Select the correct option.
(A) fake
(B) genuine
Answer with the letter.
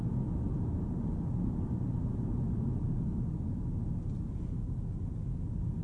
B